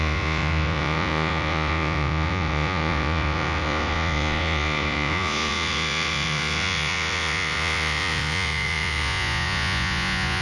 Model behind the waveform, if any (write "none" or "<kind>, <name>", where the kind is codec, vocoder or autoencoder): vocoder, Vocos